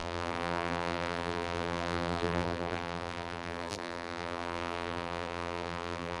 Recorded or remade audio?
remade